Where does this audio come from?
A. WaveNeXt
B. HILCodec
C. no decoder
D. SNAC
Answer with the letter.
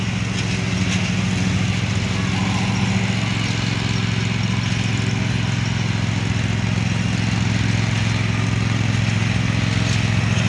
C